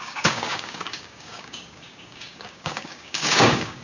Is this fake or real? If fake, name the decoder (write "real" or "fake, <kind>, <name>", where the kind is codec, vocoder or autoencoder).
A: fake, codec, DAC